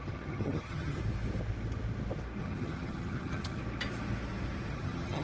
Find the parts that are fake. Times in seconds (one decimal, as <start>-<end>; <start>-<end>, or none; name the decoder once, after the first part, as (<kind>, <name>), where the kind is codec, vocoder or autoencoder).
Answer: 0.0-1.0 (vocoder, HiFi-GAN); 2.4-3.6; 4.7-5.2